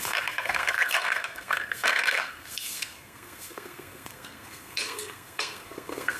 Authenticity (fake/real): fake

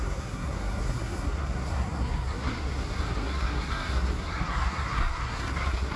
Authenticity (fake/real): fake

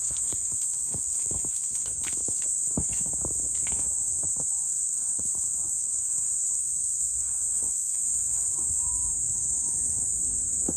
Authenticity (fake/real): fake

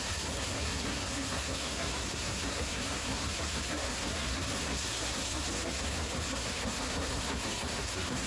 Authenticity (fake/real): fake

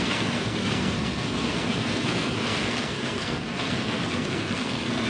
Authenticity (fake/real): fake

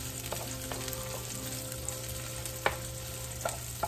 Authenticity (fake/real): real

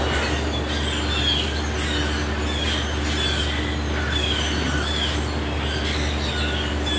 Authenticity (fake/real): real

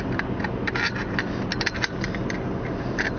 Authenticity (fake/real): real